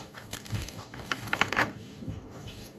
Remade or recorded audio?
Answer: remade